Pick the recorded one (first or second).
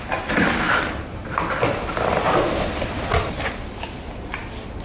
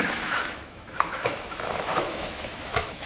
first